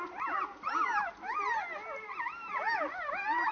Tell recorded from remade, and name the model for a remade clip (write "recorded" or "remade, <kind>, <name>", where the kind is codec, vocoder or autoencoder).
recorded